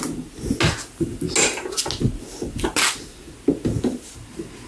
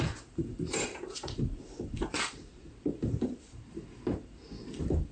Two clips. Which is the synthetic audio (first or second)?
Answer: second